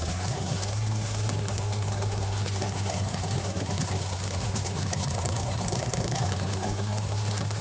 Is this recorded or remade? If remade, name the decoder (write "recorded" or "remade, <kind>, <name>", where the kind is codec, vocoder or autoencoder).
remade, codec, SNAC